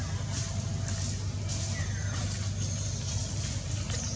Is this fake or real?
real